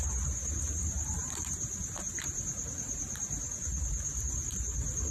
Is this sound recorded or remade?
remade